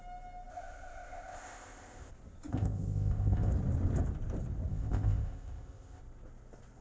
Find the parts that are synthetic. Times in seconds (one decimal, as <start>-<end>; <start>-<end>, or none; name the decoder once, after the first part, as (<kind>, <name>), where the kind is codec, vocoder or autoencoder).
0.5-2.1 (codec, ZipCodec); 2.5-3.5; 4.7-6.0